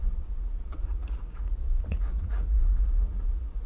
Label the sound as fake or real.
fake